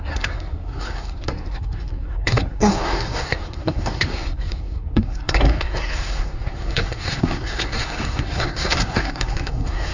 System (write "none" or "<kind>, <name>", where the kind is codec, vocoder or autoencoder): codec, SNAC